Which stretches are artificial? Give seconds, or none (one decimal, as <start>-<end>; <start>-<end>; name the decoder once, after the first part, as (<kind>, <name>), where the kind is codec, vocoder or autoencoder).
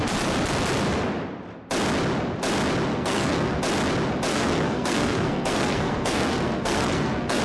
2.9-3.6 (codec, SNAC); 4.3-7.4